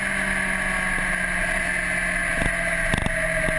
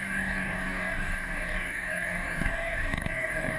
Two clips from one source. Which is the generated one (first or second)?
second